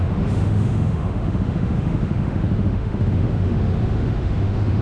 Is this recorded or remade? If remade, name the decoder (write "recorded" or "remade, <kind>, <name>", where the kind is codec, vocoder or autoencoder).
remade, autoencoder, DAC-VAE